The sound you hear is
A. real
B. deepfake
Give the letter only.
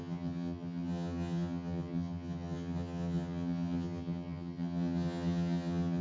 B